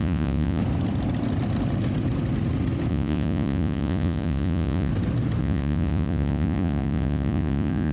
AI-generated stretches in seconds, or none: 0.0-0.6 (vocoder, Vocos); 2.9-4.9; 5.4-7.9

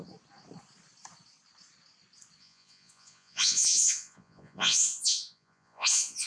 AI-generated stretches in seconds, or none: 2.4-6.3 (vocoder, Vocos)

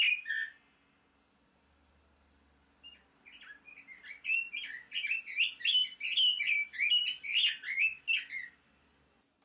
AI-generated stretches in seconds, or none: none